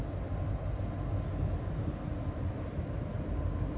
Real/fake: real